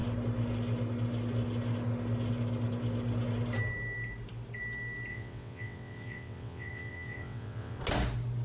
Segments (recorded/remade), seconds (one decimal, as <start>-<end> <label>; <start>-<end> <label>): 0.0-5.1 recorded; 5.1-7.8 remade; 7.8-8.4 recorded